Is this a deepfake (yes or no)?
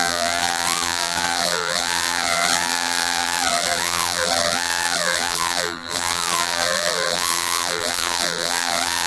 yes